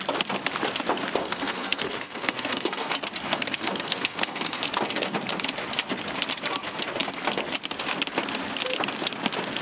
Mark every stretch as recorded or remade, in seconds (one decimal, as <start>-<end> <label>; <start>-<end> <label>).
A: 0.0-1.2 recorded; 1.2-2.9 remade; 2.9-3.3 recorded; 3.3-4.6 remade; 4.6-9.6 recorded